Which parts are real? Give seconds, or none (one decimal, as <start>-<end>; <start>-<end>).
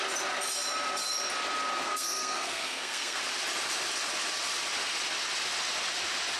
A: 0.0-1.8; 3.2-6.4